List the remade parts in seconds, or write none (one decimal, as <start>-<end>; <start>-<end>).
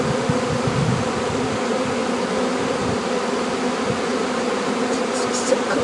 none